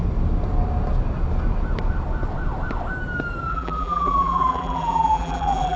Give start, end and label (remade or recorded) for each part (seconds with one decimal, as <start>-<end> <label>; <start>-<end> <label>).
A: 0.0-3.5 recorded; 3.5-5.8 remade